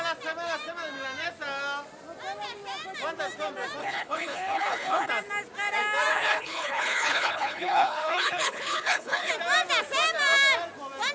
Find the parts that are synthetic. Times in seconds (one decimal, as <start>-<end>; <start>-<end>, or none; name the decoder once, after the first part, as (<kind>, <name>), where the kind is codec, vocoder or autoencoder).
3.8-5.1 (codec, HILCodec); 6.1-9.3